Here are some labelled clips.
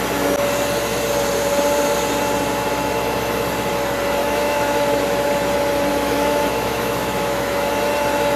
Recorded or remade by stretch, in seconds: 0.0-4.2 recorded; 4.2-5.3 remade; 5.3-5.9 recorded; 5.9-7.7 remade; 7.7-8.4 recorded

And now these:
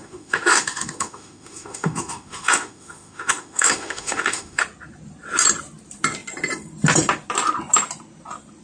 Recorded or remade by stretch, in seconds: 0.0-4.6 remade; 4.6-8.6 recorded